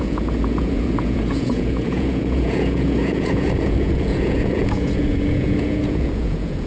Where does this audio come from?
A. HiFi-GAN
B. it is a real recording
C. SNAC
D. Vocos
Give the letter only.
D